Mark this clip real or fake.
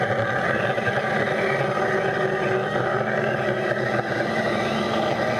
real